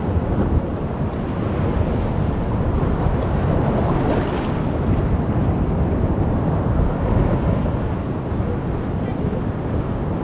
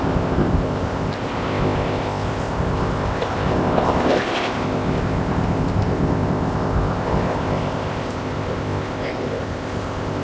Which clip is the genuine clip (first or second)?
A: first